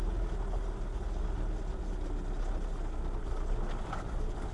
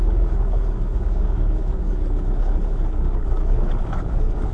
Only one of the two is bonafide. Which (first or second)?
first